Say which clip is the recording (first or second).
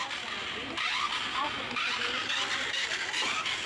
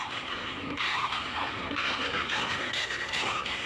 first